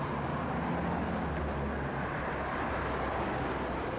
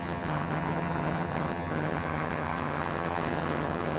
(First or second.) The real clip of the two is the first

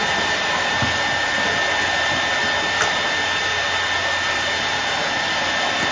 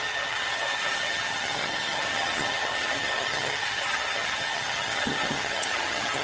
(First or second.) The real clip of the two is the first